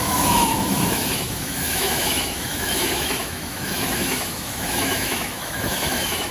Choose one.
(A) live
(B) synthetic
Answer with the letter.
B